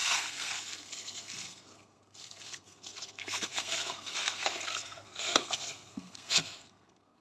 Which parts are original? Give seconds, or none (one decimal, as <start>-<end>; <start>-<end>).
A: none